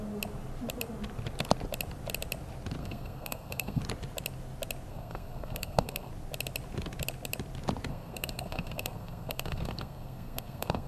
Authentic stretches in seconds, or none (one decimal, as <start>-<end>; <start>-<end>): 0.0-2.8; 3.8-4.9; 6.1-7.9